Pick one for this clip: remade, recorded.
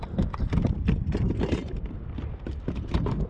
remade